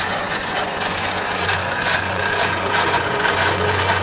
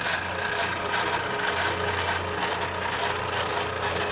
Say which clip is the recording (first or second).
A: second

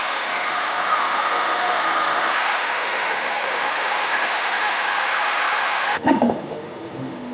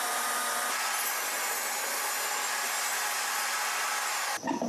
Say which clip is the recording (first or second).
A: second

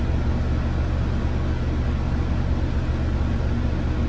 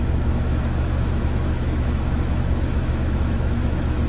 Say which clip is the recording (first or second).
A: first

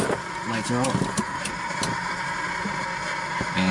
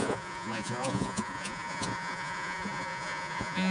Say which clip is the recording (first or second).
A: first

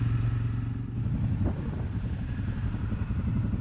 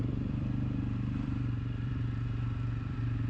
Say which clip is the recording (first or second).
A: first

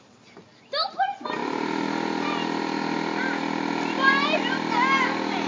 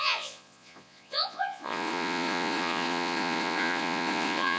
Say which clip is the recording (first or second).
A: first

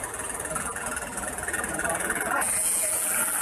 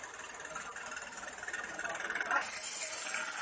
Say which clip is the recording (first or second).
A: second